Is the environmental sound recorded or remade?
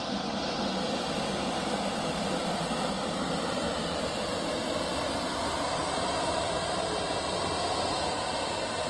recorded